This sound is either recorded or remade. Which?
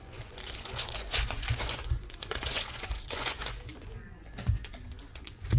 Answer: remade